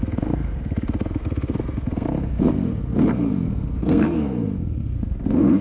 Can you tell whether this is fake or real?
fake